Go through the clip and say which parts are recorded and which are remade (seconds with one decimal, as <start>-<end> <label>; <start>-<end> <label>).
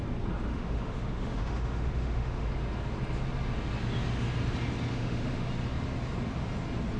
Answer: 0.0-0.5 recorded; 0.5-2.5 remade; 2.5-4.9 recorded; 4.9-5.5 remade; 5.5-7.0 recorded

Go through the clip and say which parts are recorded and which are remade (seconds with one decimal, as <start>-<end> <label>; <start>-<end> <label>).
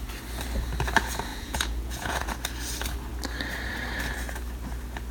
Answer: 0.0-1.3 recorded; 1.3-2.3 remade; 2.3-5.1 recorded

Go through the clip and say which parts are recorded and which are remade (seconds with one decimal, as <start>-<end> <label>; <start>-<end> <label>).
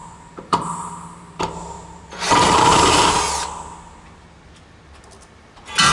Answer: 0.0-3.2 remade; 3.2-5.9 recorded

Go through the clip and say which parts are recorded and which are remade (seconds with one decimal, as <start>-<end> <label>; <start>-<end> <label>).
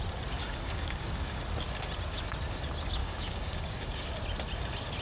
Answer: 0.0-0.4 recorded; 0.4-1.4 remade; 1.4-3.0 recorded; 3.0-4.2 remade; 4.2-5.0 recorded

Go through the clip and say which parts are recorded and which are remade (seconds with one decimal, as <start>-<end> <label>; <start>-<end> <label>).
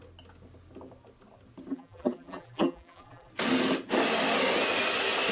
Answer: 0.0-1.7 recorded; 1.7-3.3 remade; 3.3-5.3 recorded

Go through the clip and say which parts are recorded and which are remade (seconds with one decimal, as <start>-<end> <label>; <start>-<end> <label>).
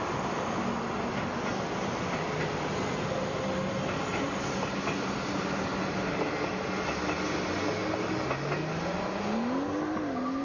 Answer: 0.0-10.4 recorded